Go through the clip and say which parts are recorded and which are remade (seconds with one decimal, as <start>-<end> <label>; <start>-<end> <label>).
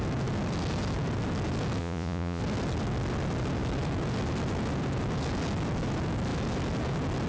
0.0-1.8 recorded; 1.8-2.4 remade; 2.4-7.3 recorded